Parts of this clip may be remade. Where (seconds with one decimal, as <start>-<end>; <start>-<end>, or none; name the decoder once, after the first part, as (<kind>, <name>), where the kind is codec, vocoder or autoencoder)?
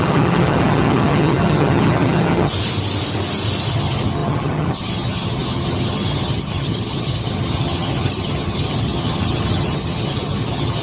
0.0-2.5 (vocoder, HiFi-GAN); 3.7-10.8